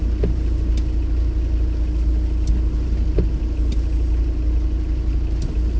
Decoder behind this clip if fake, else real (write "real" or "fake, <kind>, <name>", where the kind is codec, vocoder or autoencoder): real